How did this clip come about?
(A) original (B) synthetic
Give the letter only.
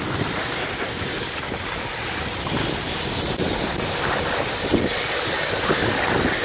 A